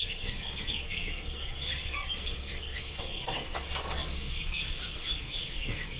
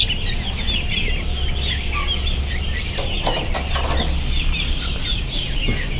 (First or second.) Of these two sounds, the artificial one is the first